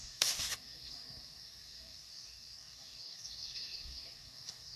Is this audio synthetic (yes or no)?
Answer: yes